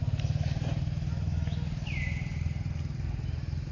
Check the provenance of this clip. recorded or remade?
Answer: recorded